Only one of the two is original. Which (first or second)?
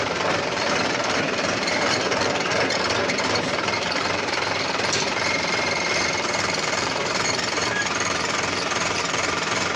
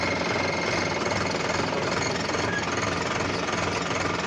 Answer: second